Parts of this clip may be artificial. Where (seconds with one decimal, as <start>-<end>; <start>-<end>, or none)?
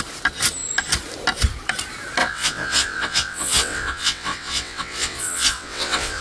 2.2-6.2